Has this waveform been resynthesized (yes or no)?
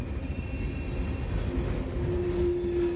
no